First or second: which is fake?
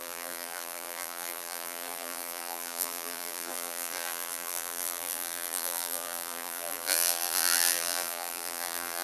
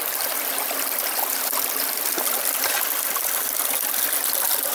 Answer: first